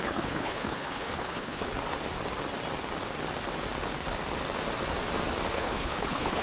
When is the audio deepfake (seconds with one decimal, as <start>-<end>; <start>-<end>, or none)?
0.0-1.7; 5.5-6.4